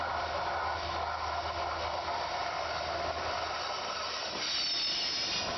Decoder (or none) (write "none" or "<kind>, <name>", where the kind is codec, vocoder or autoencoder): none